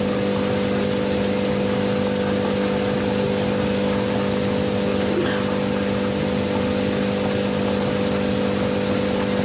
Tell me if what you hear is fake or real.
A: real